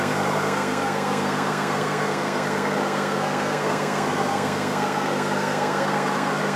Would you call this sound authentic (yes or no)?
no